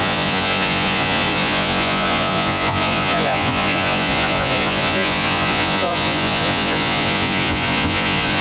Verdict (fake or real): fake